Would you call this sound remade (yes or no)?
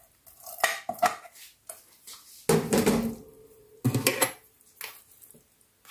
no